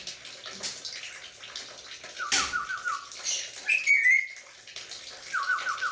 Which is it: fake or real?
real